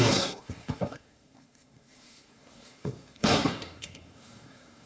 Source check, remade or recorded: remade